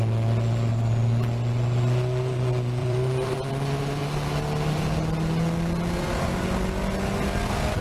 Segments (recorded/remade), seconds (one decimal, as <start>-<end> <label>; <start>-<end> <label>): 0.0-2.8 recorded; 2.8-3.5 remade; 3.5-7.8 recorded